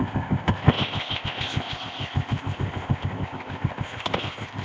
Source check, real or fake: fake